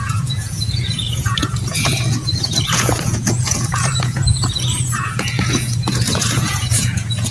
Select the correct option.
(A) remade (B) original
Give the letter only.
A